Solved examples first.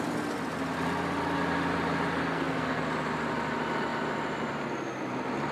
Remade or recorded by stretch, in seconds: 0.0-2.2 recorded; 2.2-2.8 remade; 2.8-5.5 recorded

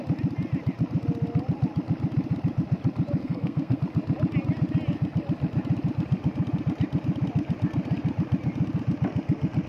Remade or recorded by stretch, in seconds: 0.0-3.2 recorded; 3.2-3.8 remade; 3.8-9.7 recorded

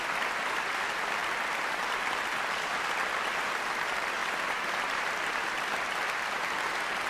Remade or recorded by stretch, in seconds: 0.0-7.1 recorded